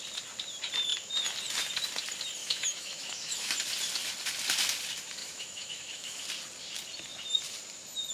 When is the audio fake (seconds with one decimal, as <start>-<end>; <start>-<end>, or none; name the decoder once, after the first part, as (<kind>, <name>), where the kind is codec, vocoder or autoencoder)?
2.4-3.5 (autoencoder, DAC-VAE); 5.2-6.2